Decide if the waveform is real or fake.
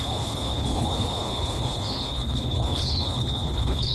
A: fake